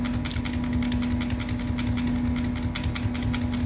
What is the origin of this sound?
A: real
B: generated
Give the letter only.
A